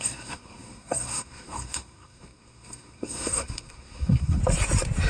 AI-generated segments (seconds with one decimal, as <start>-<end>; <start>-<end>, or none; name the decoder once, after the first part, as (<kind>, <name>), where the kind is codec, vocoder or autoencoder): 0.0-4.4 (codec, SNAC)

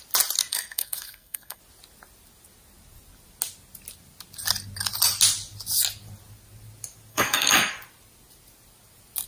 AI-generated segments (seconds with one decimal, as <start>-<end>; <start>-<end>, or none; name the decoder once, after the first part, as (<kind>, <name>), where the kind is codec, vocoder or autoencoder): 0.5-1.6 (codec, SNAC); 7.1-7.7

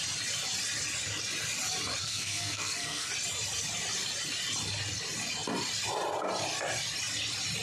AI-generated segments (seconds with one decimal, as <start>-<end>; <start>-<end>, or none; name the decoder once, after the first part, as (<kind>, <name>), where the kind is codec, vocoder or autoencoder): 2.0-3.1 (codec, SNAC)

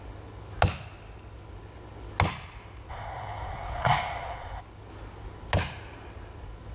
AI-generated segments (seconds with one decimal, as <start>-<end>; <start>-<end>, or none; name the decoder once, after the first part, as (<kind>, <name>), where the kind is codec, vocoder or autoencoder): 2.9-4.6 (codec, SNAC)

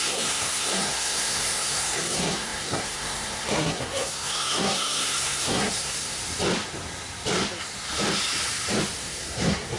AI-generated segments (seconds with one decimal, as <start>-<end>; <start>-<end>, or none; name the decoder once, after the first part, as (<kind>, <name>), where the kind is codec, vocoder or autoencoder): 0.0-6.2 (codec, SNAC); 9.0-9.8

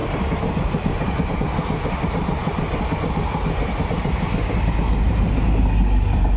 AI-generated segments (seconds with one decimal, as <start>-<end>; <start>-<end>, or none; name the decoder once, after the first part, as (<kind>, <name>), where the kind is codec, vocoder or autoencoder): none